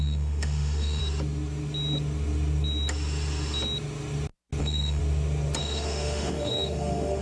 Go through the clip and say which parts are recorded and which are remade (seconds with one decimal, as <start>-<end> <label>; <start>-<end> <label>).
0.0-1.0 remade; 1.0-4.6 recorded; 4.6-5.0 remade; 5.0-5.6 recorded; 5.6-7.2 remade